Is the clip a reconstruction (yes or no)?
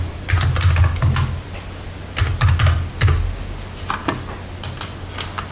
no